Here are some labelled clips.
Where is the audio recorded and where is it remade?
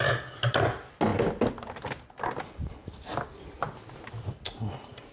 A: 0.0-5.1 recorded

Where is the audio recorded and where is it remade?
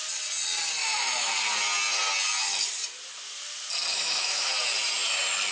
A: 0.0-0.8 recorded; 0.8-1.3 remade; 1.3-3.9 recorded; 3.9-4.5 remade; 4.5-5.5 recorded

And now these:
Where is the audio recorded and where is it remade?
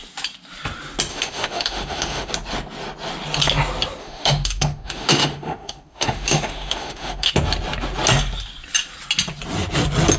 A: 0.0-1.1 recorded; 1.1-2.3 remade; 2.3-4.0 recorded; 4.0-7.3 remade; 7.3-10.2 recorded